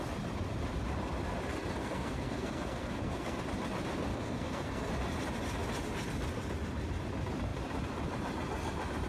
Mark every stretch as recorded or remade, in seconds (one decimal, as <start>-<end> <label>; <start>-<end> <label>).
0.0-1.8 recorded; 1.8-3.4 remade; 3.4-4.1 recorded; 4.1-4.9 remade; 4.9-9.1 recorded